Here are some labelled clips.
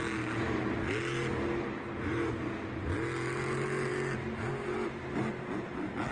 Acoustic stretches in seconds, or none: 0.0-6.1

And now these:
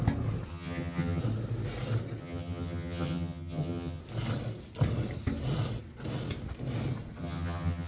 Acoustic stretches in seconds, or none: 0.0-0.5; 1.2-2.2; 4.0-7.2

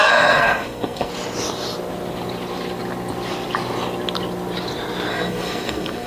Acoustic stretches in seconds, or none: 1.1-5.1

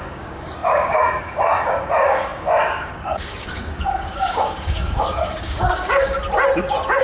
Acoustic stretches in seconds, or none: 6.2-7.0

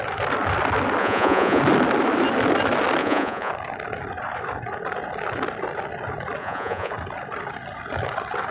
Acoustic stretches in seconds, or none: 0.0-1.0; 1.6-3.0; 3.5-6.4; 6.9-8.5